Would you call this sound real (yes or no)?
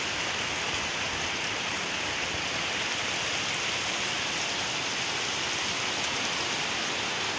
yes